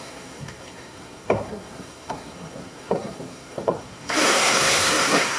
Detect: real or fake fake